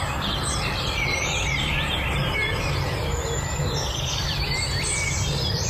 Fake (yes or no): yes